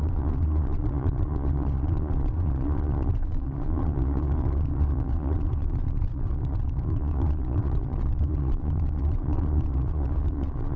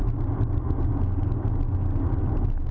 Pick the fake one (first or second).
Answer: first